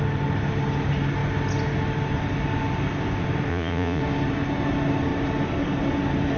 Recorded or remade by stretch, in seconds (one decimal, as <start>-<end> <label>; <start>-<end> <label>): 0.0-3.5 recorded; 3.5-4.0 remade; 4.0-6.4 recorded